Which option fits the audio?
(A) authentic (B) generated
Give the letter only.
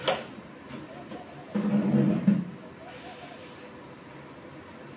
A